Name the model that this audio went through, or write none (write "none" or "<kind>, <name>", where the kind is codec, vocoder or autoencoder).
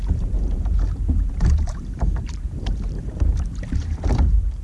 vocoder, BigVGAN v2